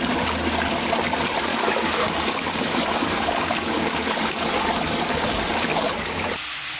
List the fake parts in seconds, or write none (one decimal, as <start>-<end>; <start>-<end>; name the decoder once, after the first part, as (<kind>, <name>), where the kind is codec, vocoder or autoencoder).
1.5-4.5 (codec, DAC); 5.7-6.3